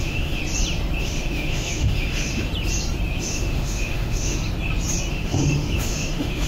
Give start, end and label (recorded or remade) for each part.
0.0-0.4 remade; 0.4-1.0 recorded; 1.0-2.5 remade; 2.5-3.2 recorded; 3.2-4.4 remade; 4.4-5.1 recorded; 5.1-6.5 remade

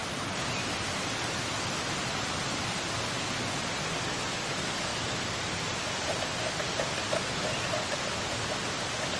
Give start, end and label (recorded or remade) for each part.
0.0-9.2 recorded

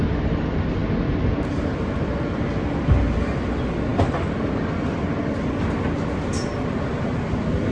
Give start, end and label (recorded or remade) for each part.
0.0-7.7 recorded

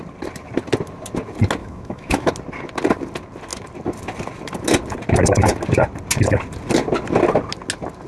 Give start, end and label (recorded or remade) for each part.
0.0-1.6 recorded; 1.6-2.3 remade; 2.3-8.1 recorded